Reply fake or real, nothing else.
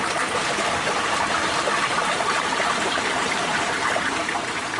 fake